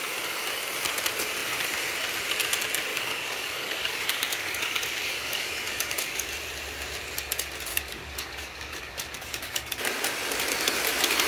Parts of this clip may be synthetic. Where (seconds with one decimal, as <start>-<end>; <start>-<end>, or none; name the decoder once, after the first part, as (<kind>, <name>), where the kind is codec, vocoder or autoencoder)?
2.9-6.3 (codec, DAC); 7.7-9.8